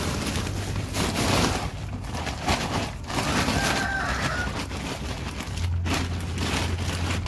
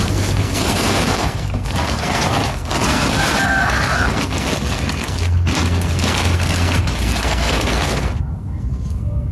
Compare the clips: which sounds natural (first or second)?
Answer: first